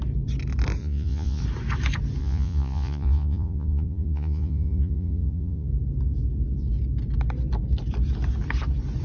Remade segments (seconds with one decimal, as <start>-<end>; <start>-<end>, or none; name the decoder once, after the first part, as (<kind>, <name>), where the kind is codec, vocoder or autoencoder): 0.8-1.4 (vocoder, Vocos); 2.2-5.7